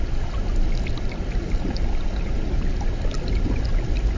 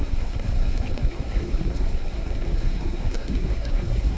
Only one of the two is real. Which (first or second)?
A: first